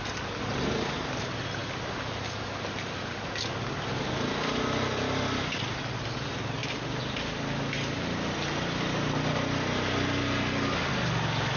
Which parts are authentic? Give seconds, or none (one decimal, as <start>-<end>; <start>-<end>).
0.0-11.6